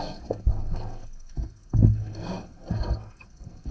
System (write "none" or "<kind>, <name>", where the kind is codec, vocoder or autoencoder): codec, SNAC